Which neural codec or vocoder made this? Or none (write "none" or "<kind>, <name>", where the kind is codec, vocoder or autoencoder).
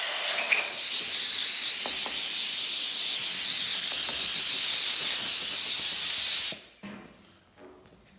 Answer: none